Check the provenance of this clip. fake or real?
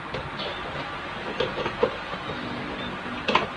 real